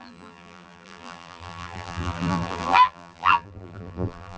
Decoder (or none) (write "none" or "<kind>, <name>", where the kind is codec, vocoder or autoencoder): vocoder, BigVGAN v2